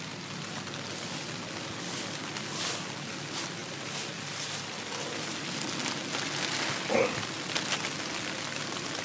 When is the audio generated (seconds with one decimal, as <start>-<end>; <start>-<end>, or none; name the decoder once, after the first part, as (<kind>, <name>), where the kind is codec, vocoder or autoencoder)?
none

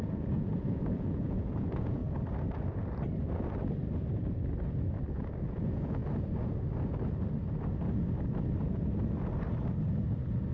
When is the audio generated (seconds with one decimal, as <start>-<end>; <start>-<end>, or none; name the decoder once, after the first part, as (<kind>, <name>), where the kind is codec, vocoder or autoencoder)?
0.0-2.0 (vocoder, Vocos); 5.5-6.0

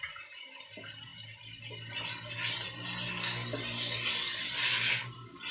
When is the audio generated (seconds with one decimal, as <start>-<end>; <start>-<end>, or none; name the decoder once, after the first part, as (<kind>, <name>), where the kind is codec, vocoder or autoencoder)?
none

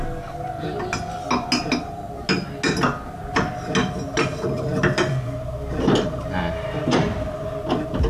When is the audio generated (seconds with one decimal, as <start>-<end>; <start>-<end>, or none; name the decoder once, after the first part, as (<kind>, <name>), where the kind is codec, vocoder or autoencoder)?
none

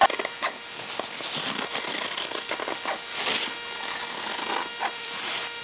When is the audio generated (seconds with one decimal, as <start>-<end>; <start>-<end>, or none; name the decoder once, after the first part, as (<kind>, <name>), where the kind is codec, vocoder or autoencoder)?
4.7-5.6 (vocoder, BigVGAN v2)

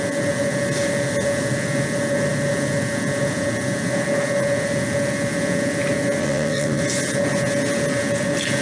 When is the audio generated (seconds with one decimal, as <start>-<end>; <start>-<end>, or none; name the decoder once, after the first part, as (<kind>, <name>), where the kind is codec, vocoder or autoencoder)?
6.2-6.8 (vocoder, WaveNeXt)